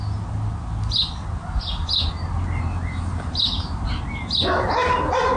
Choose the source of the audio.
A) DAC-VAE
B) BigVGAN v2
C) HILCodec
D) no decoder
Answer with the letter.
D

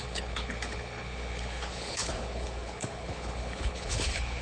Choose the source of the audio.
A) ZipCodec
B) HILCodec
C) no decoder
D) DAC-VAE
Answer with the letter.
B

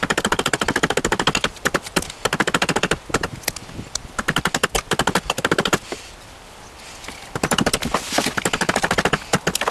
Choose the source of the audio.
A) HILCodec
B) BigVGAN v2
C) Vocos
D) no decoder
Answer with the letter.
D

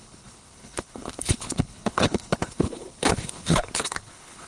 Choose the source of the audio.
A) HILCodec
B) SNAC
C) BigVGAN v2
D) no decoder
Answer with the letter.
A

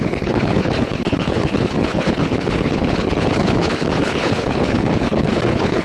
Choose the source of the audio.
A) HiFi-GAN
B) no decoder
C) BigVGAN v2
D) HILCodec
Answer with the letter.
D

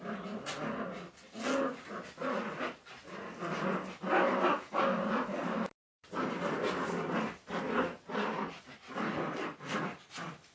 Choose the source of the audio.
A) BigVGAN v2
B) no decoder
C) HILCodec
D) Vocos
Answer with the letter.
B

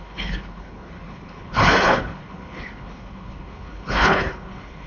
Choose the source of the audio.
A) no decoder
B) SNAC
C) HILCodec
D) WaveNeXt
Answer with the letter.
C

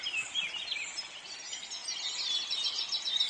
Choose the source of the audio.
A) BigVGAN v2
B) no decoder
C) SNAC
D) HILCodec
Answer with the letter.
B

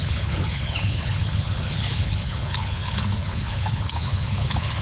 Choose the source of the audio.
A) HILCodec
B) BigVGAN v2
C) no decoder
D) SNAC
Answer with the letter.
A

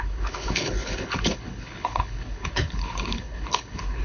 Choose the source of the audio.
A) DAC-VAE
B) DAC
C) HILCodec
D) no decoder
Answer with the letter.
C